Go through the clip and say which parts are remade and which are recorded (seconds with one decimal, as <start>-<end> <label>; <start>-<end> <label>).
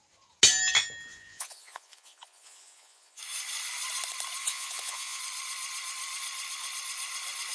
0.0-1.1 recorded; 1.1-3.2 remade; 3.2-4.4 recorded; 4.4-5.2 remade; 5.2-7.5 recorded